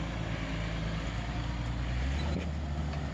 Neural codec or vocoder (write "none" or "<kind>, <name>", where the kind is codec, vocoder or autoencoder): none